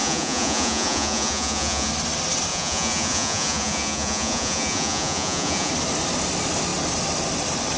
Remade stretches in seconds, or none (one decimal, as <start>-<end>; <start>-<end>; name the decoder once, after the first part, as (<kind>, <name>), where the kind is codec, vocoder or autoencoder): 0.0-1.9 (vocoder, Vocos); 2.5-5.7